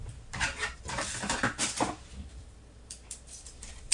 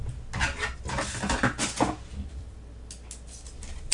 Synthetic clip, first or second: first